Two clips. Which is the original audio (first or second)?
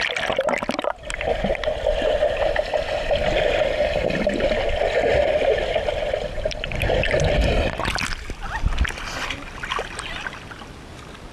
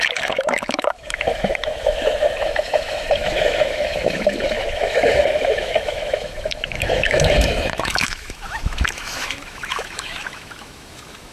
first